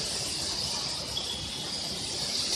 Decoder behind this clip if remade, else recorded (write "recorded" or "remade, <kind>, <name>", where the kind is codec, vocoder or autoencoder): recorded